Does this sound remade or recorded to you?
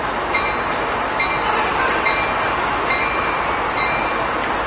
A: recorded